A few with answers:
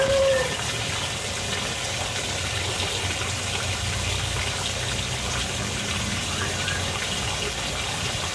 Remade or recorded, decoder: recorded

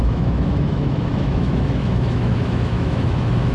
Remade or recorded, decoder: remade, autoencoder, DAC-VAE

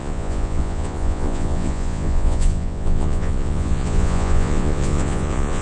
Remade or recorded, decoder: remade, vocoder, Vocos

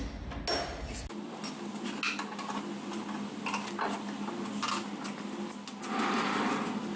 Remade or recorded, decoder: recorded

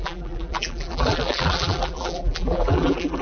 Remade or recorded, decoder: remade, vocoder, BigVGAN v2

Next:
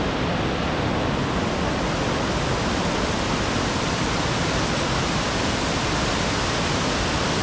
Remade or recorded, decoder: recorded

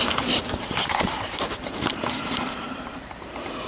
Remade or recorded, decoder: remade, vocoder, BigVGAN v2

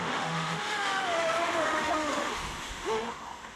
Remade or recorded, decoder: remade, autoencoder, DAC-VAE